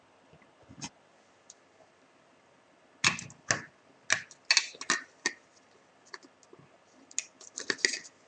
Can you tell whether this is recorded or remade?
recorded